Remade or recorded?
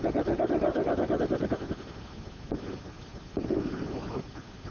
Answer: recorded